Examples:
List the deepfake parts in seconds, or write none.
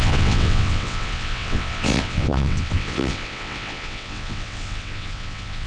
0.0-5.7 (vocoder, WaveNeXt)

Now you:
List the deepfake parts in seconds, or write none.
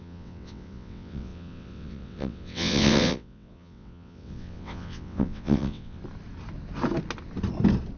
0.0-6.0 (vocoder, WaveNeXt)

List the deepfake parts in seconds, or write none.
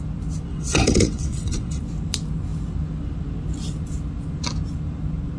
0.5-1.8 (vocoder, WaveNeXt)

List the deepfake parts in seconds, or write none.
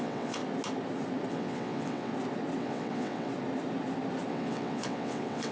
0.0-0.4 (vocoder, WaveNeXt); 1.3-2.1; 2.6-3.3; 4.3-5.5